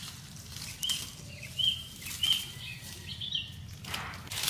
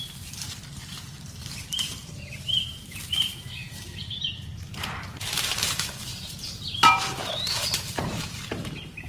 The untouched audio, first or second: first